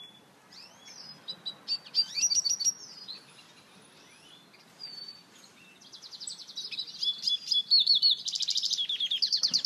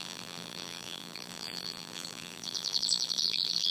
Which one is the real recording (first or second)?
first